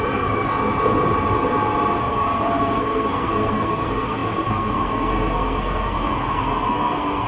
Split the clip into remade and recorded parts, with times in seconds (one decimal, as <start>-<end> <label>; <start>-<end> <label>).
0.0-0.5 remade; 0.5-2.0 recorded; 2.0-7.3 remade